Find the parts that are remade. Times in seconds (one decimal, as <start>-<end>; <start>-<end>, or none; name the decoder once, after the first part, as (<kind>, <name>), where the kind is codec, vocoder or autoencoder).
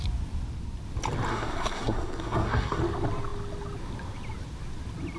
1.3-2.8 (codec, SNAC)